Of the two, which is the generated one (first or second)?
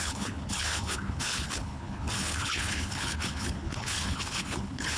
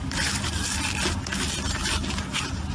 first